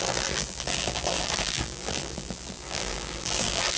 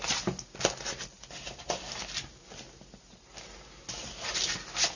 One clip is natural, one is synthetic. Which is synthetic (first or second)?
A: first